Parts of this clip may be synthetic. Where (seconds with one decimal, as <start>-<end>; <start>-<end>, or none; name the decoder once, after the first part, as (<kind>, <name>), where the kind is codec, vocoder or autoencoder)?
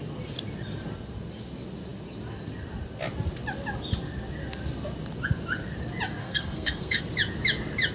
6.2-7.0 (codec, SNAC)